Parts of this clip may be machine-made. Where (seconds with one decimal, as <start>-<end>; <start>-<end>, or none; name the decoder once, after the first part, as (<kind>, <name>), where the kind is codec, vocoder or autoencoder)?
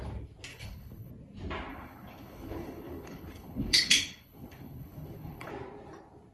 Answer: 0.5-1.1 (codec, HILCodec); 1.7-5.5